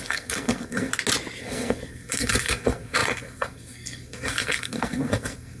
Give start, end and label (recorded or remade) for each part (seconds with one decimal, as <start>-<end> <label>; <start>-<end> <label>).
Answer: 0.0-0.9 remade; 0.9-1.4 recorded; 1.4-5.6 remade